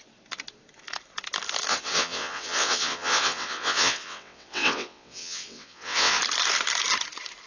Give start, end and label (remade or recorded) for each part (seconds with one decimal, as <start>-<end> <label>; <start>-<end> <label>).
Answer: 0.0-1.7 recorded; 1.7-6.2 remade; 6.2-7.5 recorded